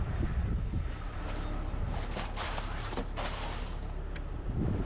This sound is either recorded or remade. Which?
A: recorded